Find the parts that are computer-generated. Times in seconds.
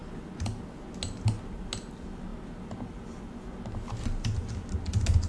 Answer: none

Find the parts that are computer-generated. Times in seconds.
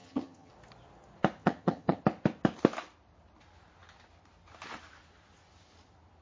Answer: 0.0-0.5 (vocoder, HiFi-GAN); 1.4-2.0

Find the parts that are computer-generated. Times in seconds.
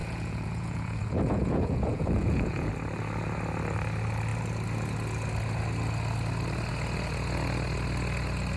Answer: 0.0-2.7 (vocoder, Vocos)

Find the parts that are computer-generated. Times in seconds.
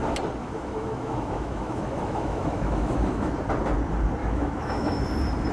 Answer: 0.4-3.3 (autoencoder, DAC-VAE); 4.2-5.0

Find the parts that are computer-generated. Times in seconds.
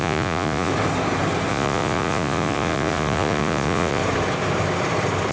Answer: 0.0-0.7 (vocoder, Vocos); 1.5-4.0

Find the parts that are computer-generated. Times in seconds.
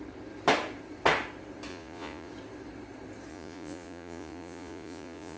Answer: 1.7-2.3 (vocoder, Vocos); 3.3-5.4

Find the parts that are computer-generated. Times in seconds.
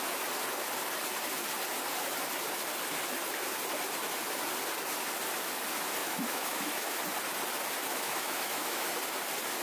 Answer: 6.0-6.9 (autoencoder, DAC-VAE); 7.9-9.0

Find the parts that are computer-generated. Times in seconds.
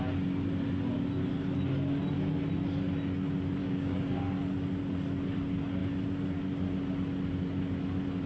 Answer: 3.6-4.2 (codec, DAC)